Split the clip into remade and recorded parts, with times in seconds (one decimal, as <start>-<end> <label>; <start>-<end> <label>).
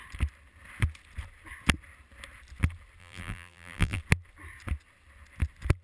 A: 0.0-3.0 recorded; 3.0-4.0 remade; 4.0-5.8 recorded